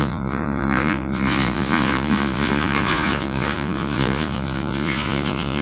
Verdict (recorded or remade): remade